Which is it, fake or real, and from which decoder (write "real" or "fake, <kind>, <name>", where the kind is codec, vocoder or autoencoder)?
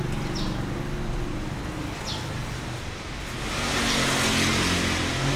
real